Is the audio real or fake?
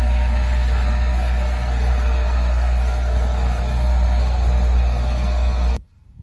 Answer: fake